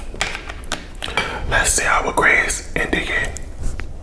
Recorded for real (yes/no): yes